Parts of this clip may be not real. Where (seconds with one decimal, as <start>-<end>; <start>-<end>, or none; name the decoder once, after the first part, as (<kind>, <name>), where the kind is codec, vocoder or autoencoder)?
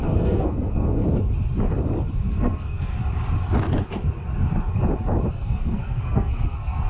0.0-1.0 (codec, SNAC); 2.1-2.9; 5.3-6.9